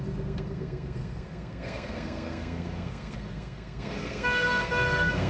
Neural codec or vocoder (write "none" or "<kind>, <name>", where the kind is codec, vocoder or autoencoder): codec, SNAC